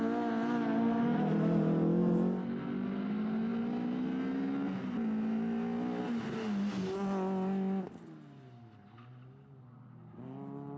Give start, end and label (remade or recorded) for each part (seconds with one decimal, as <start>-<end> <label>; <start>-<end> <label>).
0.0-10.8 recorded